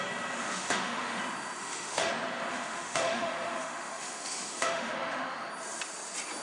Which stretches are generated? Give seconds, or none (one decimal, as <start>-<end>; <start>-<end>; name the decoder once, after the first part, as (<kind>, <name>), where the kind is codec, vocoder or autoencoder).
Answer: 0.4-1.2 (autoencoder, DAC-VAE); 1.6-2.1; 2.5-5.5